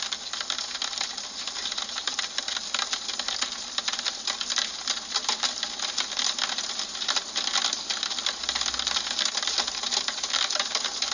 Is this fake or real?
real